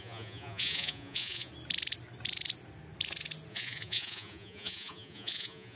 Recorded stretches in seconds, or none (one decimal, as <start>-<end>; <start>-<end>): 1.5-3.5